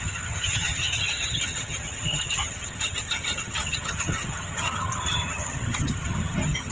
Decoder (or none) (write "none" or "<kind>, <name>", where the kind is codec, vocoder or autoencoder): vocoder, HiFi-GAN